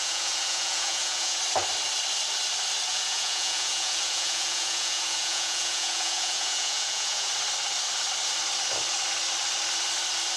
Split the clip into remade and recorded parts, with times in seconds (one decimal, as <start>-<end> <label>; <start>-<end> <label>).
0.0-1.4 remade; 1.4-2.9 recorded; 2.9-7.3 remade; 7.3-10.4 recorded